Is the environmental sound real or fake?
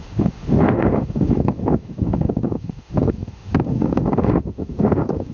fake